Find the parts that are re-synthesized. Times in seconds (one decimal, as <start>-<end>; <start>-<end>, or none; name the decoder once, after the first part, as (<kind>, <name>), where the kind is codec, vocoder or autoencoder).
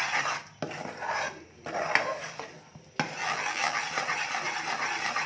3.2-3.8 (vocoder, BigVGAN v2)